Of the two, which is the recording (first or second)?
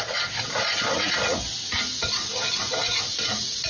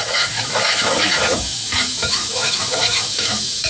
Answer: first